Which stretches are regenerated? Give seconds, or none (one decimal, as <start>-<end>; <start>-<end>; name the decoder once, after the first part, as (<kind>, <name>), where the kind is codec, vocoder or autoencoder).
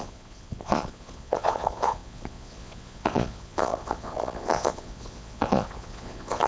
0.0-6.5 (vocoder, Vocos)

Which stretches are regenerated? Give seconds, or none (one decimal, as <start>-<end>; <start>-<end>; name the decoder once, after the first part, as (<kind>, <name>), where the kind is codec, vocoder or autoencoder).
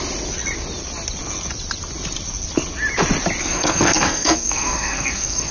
3.4-5.5 (codec, SNAC)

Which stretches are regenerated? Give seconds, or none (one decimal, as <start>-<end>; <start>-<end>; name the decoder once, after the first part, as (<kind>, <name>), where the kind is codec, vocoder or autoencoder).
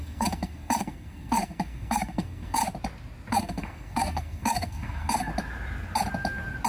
0.0-2.6 (codec, SNAC); 3.3-5.3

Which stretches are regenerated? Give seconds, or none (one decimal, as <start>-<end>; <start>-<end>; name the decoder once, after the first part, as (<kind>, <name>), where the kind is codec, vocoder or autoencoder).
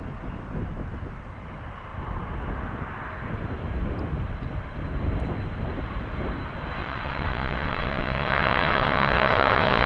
6.8-9.9 (vocoder, WaveNeXt)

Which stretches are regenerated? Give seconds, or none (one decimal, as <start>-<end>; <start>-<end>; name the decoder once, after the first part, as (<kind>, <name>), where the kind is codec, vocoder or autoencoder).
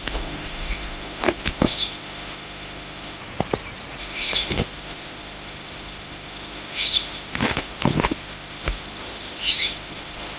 0.0-3.2 (autoencoder, DAC-VAE); 4.0-10.4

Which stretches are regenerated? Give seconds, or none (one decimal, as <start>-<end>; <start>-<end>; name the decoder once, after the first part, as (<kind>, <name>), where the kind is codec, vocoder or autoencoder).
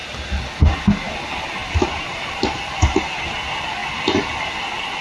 1.6-3.0 (vocoder, BigVGAN v2)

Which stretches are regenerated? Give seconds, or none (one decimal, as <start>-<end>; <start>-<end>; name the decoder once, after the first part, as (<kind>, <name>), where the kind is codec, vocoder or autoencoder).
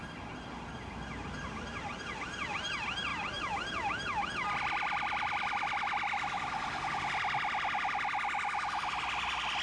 3.1-4.3 (vocoder, BigVGAN v2)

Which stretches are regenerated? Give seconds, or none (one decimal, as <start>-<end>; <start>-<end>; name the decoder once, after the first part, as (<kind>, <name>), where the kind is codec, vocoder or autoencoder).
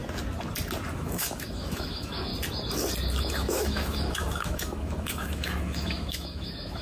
0.9-2.3 (autoencoder, DAC-VAE); 3.2-6.8